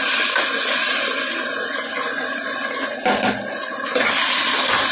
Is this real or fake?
real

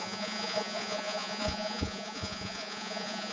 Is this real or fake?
fake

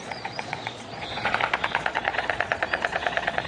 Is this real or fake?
fake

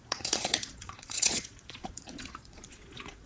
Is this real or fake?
fake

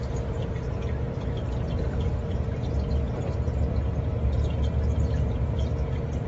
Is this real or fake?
real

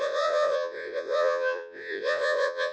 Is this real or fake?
fake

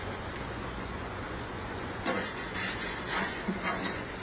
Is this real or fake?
fake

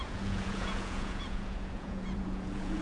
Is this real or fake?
fake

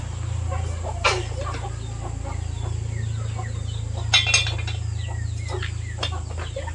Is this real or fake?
real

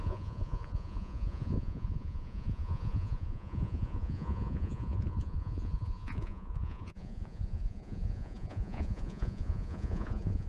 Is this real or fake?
fake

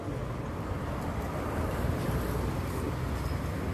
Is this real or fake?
real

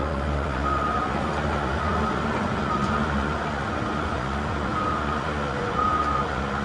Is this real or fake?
fake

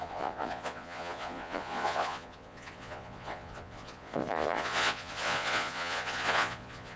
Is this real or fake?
fake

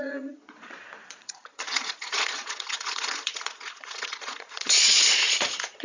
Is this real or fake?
fake